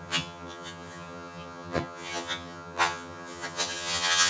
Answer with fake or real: fake